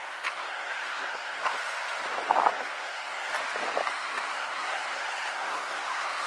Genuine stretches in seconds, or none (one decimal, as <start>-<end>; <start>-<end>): 1.4-2.5; 3.3-3.9